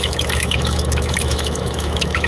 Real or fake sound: fake